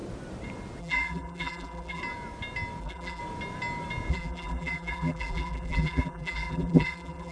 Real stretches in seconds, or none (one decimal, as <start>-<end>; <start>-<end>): 0.0-0.8; 2.0-2.8; 3.2-4.1